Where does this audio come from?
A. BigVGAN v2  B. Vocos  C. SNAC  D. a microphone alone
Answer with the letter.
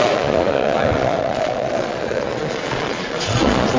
B